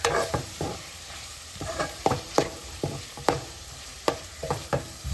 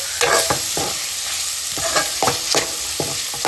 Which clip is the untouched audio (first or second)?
second